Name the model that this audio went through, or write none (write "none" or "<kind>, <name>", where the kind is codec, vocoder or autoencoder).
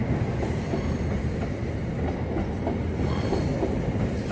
none